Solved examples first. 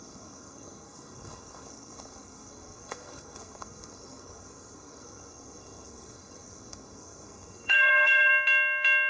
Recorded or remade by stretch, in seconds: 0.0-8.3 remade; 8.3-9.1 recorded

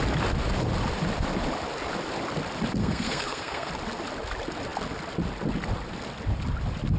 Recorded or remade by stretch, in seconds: 0.0-2.8 recorded; 2.8-3.7 remade; 3.7-7.0 recorded

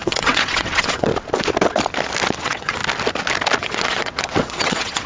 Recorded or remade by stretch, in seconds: 0.0-1.1 remade; 1.1-2.4 recorded; 2.4-2.8 remade; 2.8-3.6 recorded; 3.6-5.1 remade

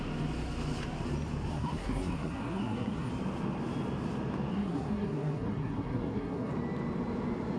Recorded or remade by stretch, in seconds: 0.0-1.5 recorded; 1.5-3.1 remade; 3.1-4.5 recorded; 4.5-6.5 remade; 6.5-7.6 recorded

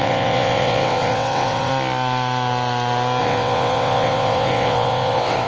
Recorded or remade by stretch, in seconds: 0.0-1.7 remade; 1.7-3.2 recorded; 3.2-5.5 remade

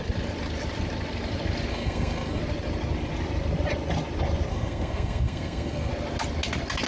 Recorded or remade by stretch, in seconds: 0.0-1.7 recorded; 1.7-2.4 remade; 2.4-4.5 recorded; 4.5-5.9 remade; 5.9-6.9 recorded

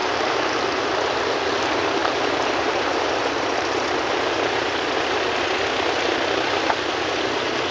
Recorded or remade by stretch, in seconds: 0.0-0.6 remade; 0.6-2.0 recorded; 2.0-5.3 remade; 5.3-7.7 recorded

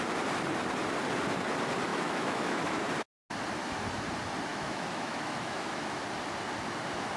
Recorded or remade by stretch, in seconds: 0.0-1.9 recorded; 1.9-2.8 remade; 2.8-4.5 recorded; 4.5-6.0 remade; 6.0-7.2 recorded